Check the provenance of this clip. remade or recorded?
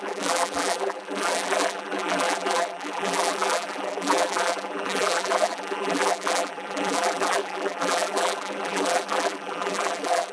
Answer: remade